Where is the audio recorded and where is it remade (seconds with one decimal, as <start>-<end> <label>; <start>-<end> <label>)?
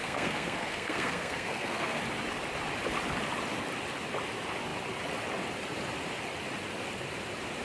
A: 0.0-2.0 remade; 2.0-7.6 recorded